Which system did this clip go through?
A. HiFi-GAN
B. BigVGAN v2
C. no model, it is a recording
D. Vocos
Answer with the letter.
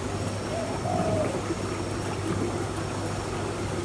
C